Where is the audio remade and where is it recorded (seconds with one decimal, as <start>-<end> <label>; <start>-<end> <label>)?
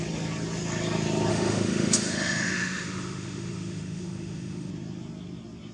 0.0-1.3 recorded; 1.3-4.7 remade; 4.7-5.7 recorded